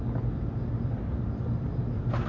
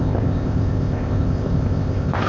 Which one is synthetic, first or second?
second